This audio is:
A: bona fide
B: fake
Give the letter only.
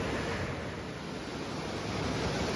A